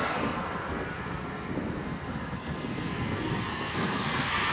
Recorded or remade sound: remade